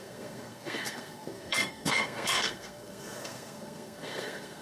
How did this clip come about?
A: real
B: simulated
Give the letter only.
B